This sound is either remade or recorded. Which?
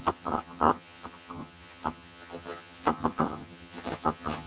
remade